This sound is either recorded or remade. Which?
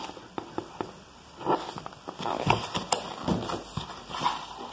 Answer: recorded